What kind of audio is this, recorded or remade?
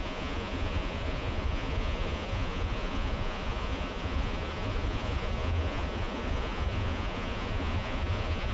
remade